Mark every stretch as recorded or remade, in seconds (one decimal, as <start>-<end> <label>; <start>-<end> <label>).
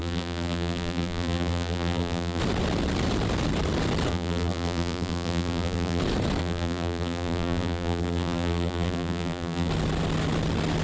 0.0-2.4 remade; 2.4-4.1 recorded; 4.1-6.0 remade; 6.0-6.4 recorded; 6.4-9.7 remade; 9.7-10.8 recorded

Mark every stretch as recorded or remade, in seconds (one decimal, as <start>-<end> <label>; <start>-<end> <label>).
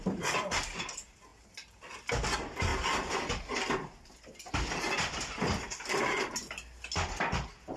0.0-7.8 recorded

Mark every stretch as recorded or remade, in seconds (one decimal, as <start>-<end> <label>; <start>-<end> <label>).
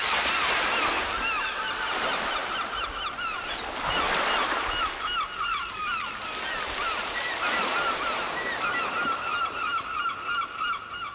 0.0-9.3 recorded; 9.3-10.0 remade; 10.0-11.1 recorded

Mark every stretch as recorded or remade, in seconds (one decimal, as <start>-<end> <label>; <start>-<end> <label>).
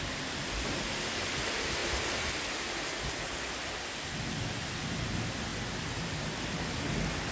0.0-1.8 recorded; 1.8-2.4 remade; 2.4-7.3 recorded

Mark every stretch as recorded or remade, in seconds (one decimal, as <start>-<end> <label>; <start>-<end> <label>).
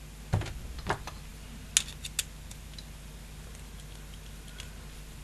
0.0-5.2 recorded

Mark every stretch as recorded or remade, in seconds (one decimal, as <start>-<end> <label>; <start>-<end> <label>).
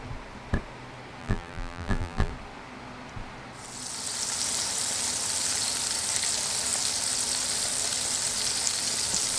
0.0-1.2 recorded; 1.2-2.3 remade; 2.3-9.4 recorded